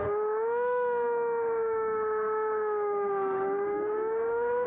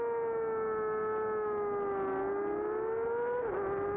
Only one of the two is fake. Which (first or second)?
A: first